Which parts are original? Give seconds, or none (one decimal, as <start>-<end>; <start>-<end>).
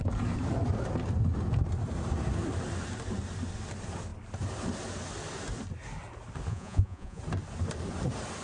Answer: 0.0-6.5; 7.2-8.4